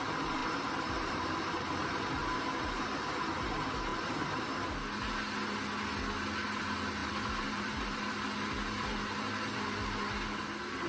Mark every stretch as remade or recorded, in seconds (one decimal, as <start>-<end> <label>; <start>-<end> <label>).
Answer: 0.0-0.4 recorded; 0.4-1.5 remade; 1.5-2.2 recorded; 2.2-2.8 remade; 2.8-3.9 recorded; 3.9-4.7 remade; 4.7-7.0 recorded; 7.0-8.2 remade; 8.2-10.9 recorded